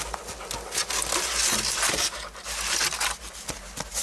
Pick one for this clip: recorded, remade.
recorded